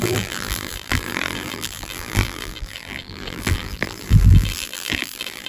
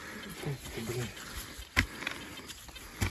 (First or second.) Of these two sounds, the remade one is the first